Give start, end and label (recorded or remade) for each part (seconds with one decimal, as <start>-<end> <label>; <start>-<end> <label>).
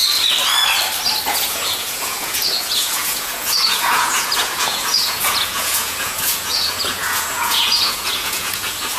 0.0-1.3 recorded; 1.3-9.0 remade